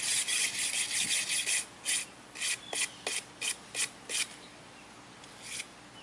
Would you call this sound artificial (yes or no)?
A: no